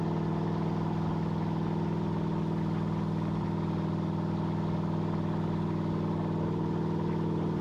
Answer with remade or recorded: recorded